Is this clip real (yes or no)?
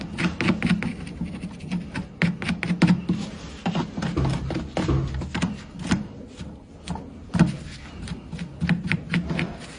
yes